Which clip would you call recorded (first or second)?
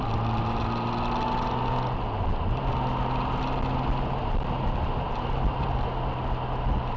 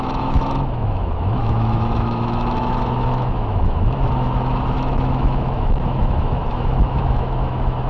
first